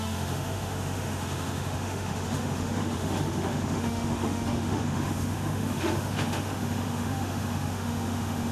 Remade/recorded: remade